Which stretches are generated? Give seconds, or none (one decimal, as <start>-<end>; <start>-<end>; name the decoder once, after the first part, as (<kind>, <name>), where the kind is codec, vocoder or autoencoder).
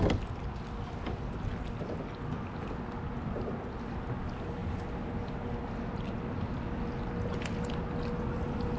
none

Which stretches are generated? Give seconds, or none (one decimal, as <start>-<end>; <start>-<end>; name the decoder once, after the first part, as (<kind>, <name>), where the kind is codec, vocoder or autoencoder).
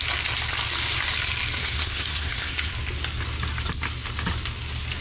1.6-2.7 (codec, SNAC)